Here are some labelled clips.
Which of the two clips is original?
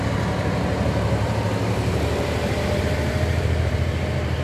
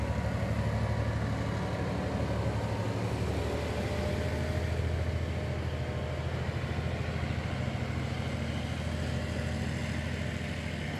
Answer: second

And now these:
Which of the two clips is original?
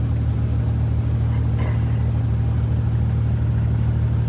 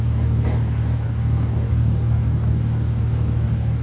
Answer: first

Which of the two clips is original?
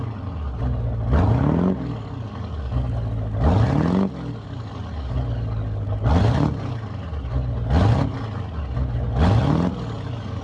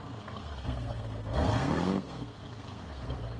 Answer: first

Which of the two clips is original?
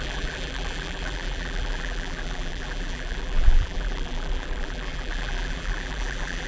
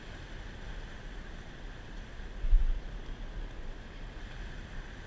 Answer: second